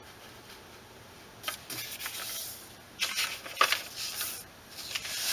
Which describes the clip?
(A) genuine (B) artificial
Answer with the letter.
A